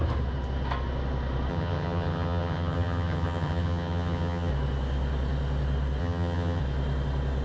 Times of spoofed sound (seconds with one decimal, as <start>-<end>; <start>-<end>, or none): 1.5-4.5; 6.0-6.6

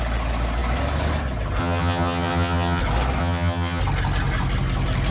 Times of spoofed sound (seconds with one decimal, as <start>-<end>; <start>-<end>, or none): 1.6-2.8; 3.2-3.8

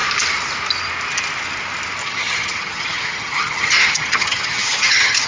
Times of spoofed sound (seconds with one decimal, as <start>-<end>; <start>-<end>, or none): 2.0-5.3

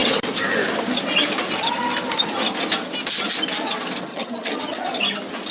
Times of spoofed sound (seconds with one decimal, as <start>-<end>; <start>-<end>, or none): 4.1-5.0